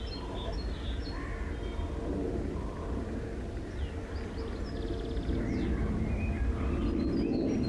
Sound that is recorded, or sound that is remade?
recorded